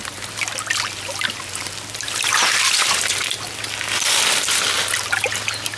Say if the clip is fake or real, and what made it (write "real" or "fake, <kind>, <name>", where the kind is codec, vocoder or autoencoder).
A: real